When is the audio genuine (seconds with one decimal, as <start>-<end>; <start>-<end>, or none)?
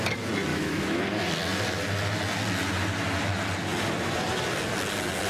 0.0-0.5; 1.0-5.3